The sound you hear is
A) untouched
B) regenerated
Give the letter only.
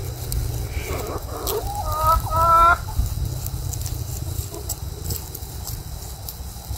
A